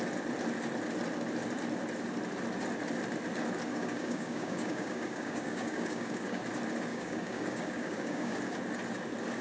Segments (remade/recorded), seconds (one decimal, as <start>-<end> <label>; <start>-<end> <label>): 0.0-3.7 recorded; 3.7-6.4 remade; 6.4-6.9 recorded; 6.9-8.4 remade; 8.4-9.4 recorded